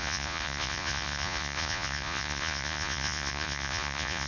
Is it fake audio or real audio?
fake